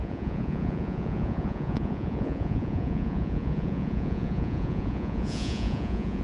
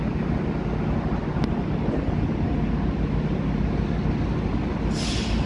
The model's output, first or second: first